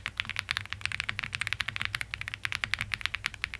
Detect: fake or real real